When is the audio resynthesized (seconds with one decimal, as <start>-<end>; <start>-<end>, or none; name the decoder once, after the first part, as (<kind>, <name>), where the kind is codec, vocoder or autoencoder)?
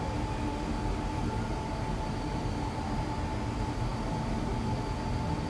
none